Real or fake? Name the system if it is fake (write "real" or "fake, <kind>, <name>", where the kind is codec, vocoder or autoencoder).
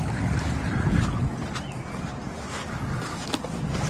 real